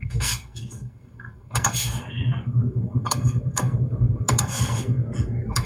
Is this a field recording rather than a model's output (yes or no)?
no